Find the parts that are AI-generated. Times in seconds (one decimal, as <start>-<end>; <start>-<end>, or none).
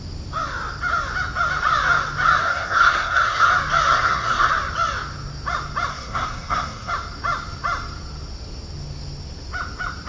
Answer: 2.4-3.5; 3.9-4.5; 5.9-6.9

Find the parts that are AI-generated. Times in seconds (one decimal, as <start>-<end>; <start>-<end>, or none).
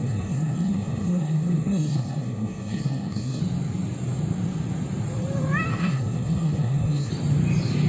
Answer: 0.0-3.4; 5.7-7.1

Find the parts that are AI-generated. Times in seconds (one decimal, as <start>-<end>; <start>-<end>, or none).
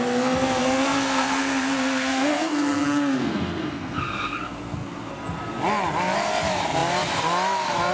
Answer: 0.6-5.1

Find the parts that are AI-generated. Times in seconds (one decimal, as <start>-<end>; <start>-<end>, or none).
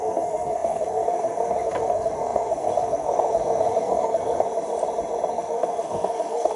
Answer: 0.0-4.5; 5.3-6.6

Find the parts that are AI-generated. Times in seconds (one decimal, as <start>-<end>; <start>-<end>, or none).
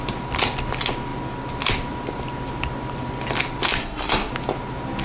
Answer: 3.8-4.3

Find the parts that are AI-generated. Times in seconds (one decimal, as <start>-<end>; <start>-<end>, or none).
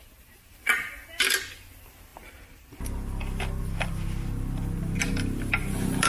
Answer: none